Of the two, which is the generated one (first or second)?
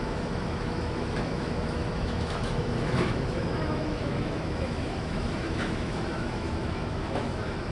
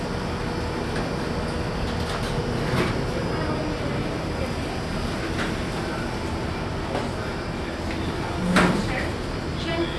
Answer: first